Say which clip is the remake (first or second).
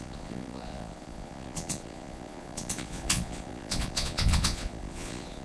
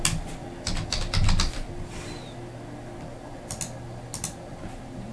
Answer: first